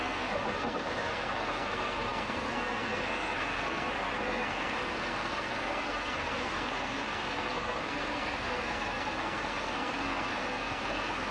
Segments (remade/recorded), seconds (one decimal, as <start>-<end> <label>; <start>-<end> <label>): 0.0-11.3 remade